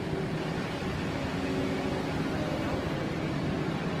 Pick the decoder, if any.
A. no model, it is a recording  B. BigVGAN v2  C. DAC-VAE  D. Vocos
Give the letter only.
A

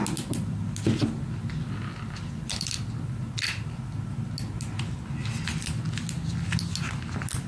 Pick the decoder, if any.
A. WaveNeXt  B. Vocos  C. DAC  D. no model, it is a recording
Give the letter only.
D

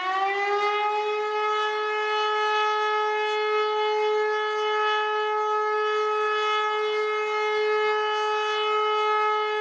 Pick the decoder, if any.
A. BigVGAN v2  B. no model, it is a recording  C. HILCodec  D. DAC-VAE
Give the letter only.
B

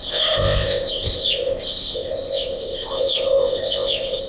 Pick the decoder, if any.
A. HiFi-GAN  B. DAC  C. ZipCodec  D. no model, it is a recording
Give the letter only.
C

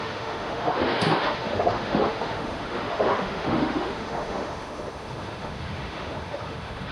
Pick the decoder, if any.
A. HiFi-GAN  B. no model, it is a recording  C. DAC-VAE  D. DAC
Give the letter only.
C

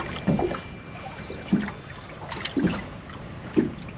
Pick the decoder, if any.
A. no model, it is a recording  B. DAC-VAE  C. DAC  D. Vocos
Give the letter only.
A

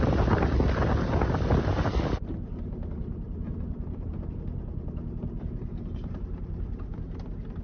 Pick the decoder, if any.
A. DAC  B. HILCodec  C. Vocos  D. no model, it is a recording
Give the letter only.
D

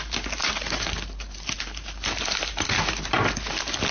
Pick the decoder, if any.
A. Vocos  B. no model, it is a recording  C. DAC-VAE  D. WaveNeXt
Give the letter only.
B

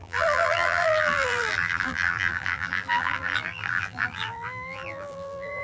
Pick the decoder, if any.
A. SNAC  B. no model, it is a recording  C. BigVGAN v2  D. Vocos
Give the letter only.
C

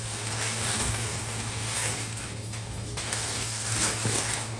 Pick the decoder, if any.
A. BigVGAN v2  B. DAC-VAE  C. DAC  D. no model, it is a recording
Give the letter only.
C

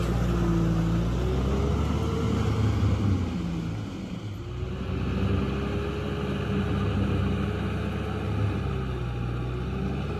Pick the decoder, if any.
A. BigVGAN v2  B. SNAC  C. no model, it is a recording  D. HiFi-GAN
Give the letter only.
C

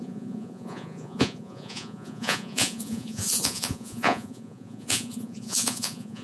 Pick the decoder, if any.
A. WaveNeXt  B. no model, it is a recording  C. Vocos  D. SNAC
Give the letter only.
C